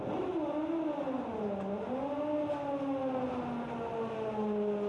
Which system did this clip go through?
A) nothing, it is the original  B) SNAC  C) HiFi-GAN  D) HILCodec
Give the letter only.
A